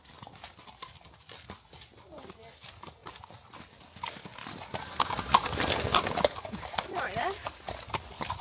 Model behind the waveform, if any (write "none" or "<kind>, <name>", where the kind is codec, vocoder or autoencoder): none